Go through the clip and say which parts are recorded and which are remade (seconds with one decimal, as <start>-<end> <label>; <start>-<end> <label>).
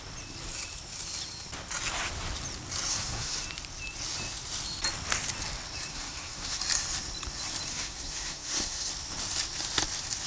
0.0-2.9 recorded; 2.9-3.4 remade; 3.4-5.9 recorded; 5.9-6.6 remade; 6.6-7.7 recorded; 7.7-8.9 remade; 8.9-10.3 recorded